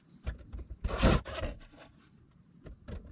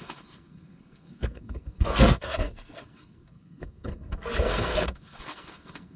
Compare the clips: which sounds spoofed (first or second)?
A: second